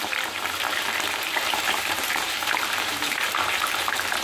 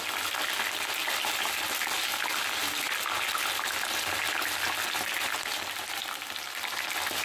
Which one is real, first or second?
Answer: second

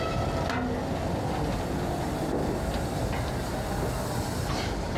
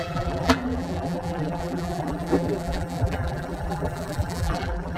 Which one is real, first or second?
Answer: first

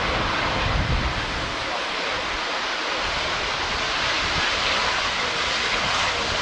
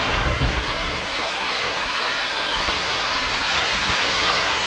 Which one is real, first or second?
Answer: first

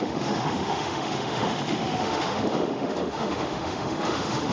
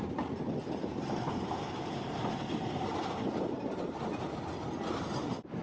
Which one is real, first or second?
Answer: second